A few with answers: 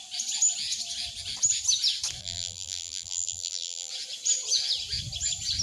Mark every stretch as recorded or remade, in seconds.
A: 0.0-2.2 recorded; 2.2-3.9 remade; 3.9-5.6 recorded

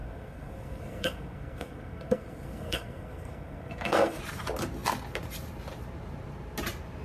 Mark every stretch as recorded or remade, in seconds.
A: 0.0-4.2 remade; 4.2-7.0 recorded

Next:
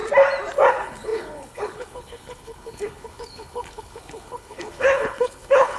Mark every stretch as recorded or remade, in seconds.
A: 0.0-0.7 recorded; 0.7-5.8 remade

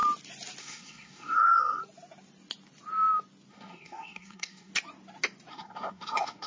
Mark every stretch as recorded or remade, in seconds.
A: 0.0-0.6 recorded; 0.6-1.8 remade; 1.8-3.5 recorded; 3.5-4.7 remade; 4.7-5.5 recorded; 5.5-6.5 remade

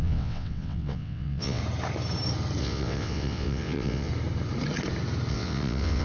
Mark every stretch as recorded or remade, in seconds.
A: 0.0-1.6 remade; 1.6-2.6 recorded; 2.6-4.1 remade; 4.1-5.3 recorded; 5.3-6.0 remade

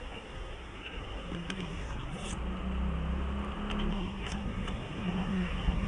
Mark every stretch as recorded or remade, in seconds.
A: 0.0-2.3 remade; 2.3-3.9 recorded; 3.9-5.9 remade

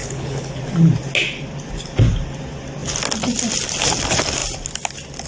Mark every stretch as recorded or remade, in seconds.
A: 0.0-0.6 remade; 0.6-5.3 recorded

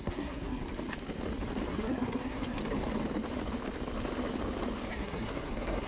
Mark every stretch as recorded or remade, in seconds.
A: 0.0-0.6 remade; 0.6-1.7 recorded; 1.7-2.6 remade; 2.6-4.9 recorded; 4.9-5.9 remade